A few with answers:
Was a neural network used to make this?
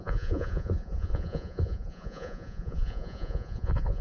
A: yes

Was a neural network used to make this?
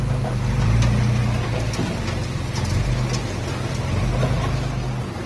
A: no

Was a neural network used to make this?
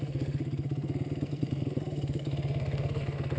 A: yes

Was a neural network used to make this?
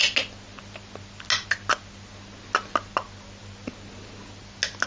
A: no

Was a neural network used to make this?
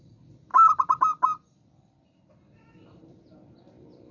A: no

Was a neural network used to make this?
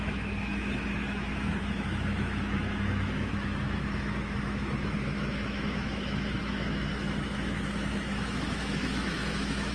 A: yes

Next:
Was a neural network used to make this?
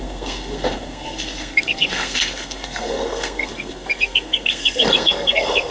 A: yes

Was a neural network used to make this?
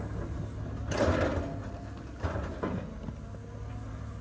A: no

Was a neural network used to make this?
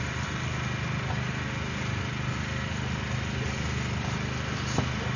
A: no